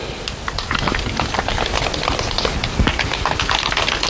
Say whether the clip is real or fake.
real